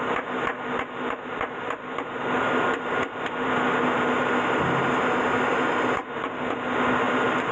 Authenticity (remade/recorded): recorded